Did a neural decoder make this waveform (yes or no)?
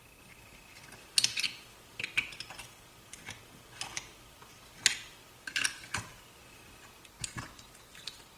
no